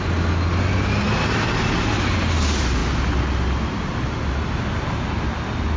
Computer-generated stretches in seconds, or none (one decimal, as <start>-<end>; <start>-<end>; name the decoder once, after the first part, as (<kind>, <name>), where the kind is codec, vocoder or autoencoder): none